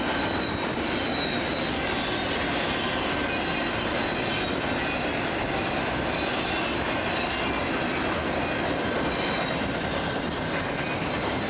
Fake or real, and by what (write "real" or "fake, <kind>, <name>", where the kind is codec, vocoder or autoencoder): real